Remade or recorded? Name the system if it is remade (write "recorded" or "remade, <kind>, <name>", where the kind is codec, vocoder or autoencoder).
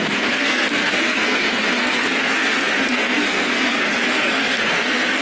remade, codec, SNAC